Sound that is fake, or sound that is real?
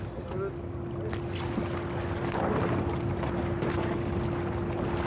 real